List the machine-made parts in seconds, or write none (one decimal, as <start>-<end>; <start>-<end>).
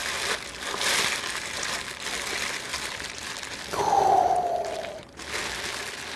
none